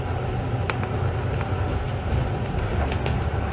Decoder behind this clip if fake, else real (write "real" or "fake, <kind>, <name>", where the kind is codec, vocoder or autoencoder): real